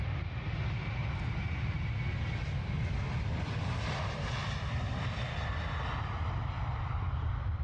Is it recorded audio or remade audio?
recorded